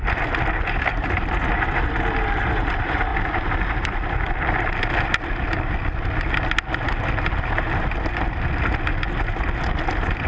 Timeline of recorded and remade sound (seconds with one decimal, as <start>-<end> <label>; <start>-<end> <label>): 0.0-10.3 recorded